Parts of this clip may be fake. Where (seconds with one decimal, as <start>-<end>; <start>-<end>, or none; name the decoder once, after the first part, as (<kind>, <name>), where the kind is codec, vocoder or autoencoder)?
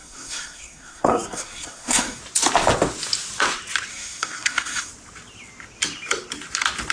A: 0.0-2.2 (codec, SNAC); 3.9-4.9